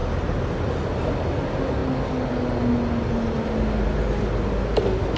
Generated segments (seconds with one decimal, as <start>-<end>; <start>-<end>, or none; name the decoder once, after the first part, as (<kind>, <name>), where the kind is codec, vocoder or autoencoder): none